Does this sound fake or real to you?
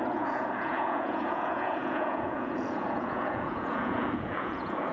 fake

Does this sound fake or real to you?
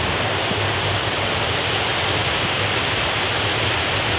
real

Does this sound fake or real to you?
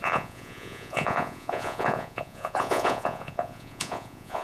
fake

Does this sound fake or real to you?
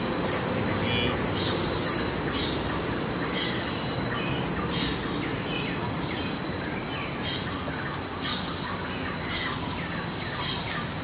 real